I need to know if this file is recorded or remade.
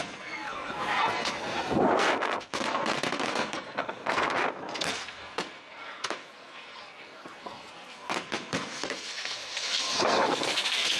remade